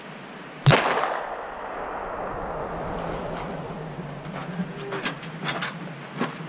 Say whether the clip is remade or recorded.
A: recorded